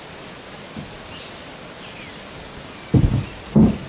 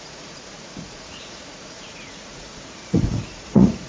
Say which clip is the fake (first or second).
second